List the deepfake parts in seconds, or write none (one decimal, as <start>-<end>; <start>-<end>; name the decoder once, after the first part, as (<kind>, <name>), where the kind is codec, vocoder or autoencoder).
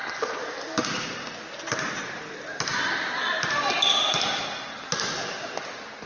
none